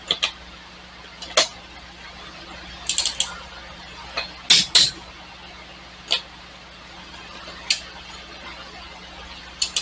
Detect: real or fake real